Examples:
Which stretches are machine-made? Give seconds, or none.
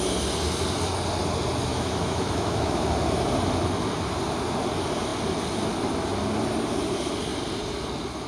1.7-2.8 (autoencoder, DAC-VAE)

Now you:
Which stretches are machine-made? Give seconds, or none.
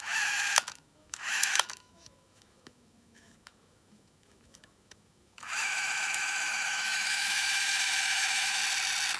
0.0-8.6 (autoencoder, DAC-VAE)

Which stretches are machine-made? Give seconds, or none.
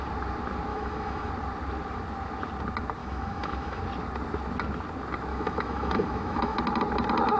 0.7-1.3 (autoencoder, DAC-VAE); 3.0-3.8; 5.3-6.6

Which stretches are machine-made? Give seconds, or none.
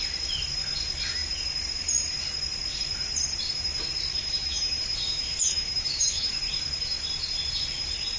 4.1-4.8 (autoencoder, DAC-VAE); 5.4-6.3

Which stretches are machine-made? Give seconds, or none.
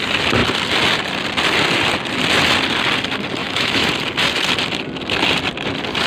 3.4-3.9 (autoencoder, DAC-VAE)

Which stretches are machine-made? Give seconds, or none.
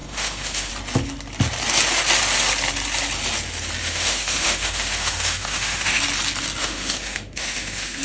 0.0-0.7 (autoencoder, DAC-VAE); 3.8-6.0; 6.6-8.0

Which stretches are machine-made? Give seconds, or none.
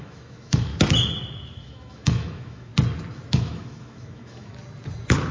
0.0-0.7 (autoencoder, DAC-VAE); 1.5-2.7; 3.3-4.6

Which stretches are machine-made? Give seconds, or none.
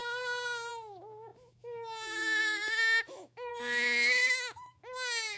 0.7-5.4 (autoencoder, DAC-VAE)